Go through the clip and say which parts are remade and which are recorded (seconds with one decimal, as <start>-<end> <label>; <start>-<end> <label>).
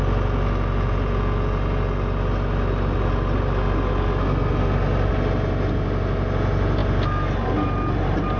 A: 0.0-8.4 recorded